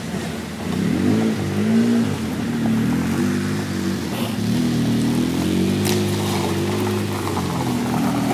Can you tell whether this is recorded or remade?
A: recorded